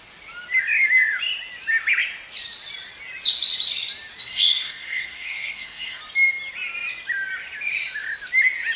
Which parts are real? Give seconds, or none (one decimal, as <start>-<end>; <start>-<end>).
0.0-4.2; 6.0-8.8